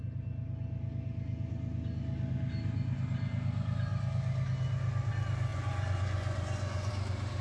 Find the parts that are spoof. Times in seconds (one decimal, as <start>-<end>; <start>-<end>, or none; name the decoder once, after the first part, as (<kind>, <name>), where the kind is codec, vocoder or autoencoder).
5.5-6.9 (vocoder, Vocos)